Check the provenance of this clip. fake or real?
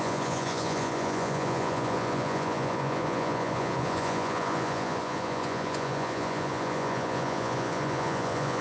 fake